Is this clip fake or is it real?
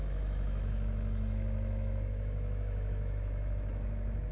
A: fake